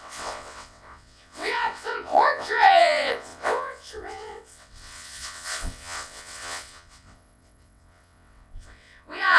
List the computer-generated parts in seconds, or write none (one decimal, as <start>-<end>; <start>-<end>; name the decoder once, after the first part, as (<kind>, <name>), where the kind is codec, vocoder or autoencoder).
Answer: 0.0-9.4 (vocoder, WaveNeXt)